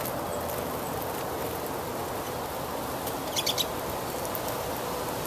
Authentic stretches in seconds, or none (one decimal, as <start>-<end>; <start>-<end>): 0.0-5.3